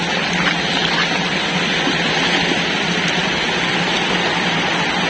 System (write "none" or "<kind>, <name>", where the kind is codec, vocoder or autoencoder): none